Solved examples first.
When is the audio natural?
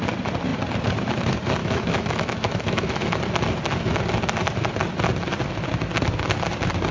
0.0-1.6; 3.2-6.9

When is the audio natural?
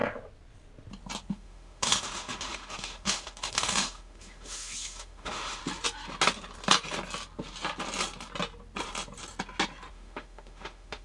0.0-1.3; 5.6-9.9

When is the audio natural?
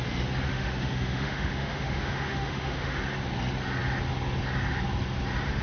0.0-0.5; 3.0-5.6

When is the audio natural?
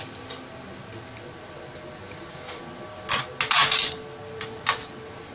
0.0-5.3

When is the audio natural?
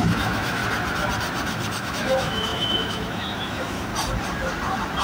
0.6-1.8; 3.9-5.0